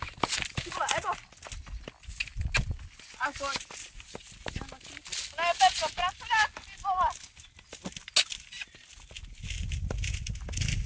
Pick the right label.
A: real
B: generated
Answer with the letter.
A